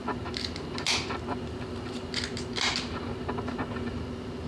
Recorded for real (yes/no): yes